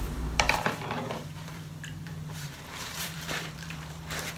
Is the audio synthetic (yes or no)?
yes